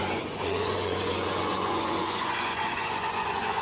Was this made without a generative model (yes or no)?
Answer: no